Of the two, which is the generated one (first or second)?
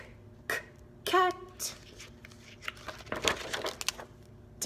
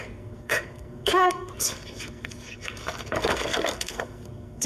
second